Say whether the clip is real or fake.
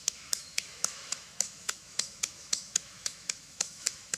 fake